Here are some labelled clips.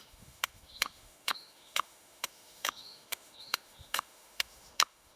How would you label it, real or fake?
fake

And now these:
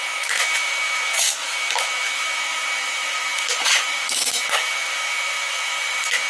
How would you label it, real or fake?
fake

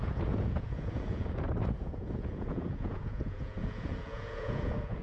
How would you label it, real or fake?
fake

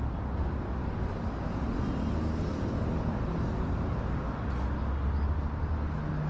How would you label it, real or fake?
real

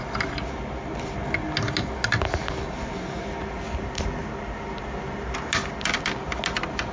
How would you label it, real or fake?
real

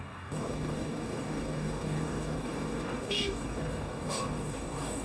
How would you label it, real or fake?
fake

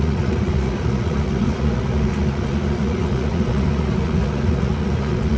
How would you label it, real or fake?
fake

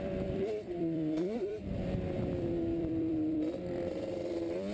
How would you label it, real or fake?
fake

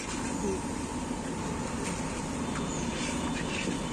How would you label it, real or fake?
real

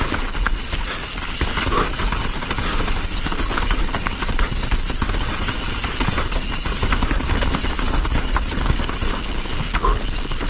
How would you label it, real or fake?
real